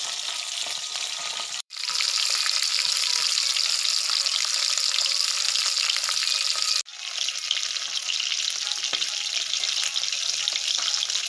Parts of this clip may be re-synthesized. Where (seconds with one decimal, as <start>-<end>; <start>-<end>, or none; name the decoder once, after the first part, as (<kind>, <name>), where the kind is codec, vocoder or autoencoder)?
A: 0.6-2.7 (vocoder, BigVGAN v2); 3.5-5.5